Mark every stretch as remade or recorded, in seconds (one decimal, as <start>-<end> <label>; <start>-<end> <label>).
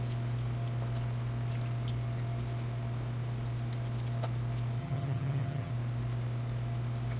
0.0-4.8 recorded; 4.8-5.7 remade; 5.7-7.2 recorded